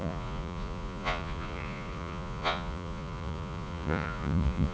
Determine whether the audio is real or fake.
fake